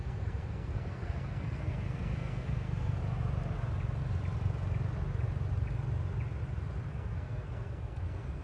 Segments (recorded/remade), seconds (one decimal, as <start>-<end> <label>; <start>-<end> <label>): 0.0-3.0 remade; 3.0-6.9 recorded; 6.9-8.4 remade